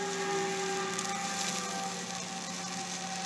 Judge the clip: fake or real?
real